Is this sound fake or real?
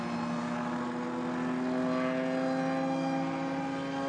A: real